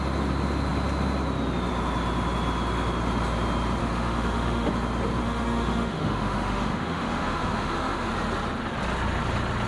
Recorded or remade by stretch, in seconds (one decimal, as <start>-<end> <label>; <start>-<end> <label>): 0.0-3.8 recorded; 3.8-4.7 remade; 4.7-5.2 recorded; 5.2-8.1 remade; 8.1-9.7 recorded